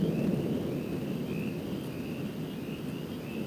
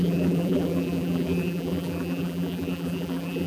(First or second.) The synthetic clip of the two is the second